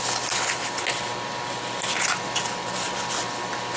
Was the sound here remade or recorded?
recorded